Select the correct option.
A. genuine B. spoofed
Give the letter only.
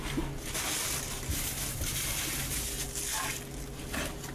A